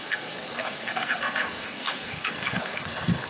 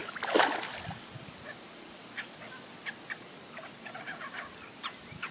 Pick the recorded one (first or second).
second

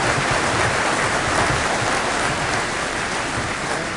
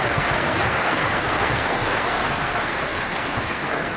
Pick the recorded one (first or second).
first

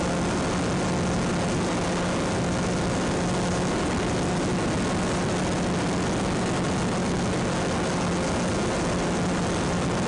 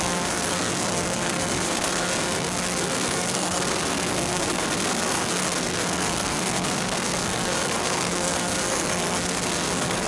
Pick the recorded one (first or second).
first